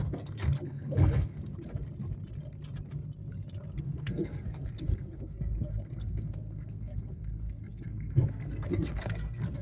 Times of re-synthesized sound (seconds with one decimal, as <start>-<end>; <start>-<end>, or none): 0.0-1.4; 3.8-9.6